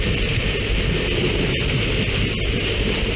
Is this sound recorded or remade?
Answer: recorded